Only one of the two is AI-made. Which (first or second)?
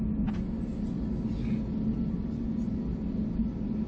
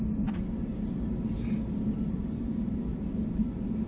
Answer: second